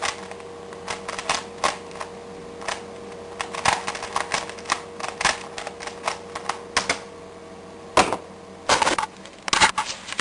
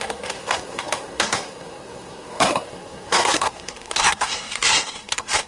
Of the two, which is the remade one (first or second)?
second